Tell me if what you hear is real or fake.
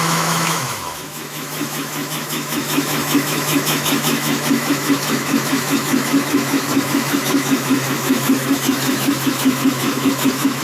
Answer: fake